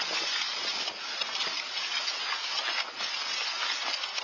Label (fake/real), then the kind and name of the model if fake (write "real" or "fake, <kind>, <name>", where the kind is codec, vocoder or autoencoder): real